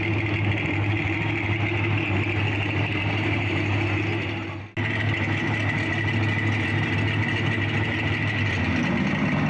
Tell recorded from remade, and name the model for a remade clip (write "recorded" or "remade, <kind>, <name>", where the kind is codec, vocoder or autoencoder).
recorded